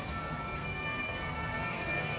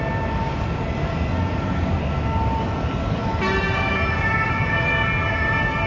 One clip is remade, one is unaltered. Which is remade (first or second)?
first